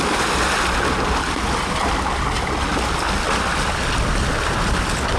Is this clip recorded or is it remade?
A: recorded